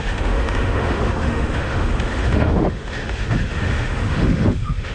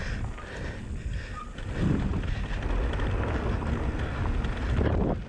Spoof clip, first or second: first